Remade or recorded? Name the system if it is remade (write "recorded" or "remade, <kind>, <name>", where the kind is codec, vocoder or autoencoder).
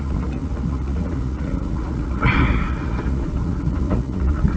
remade, vocoder, Vocos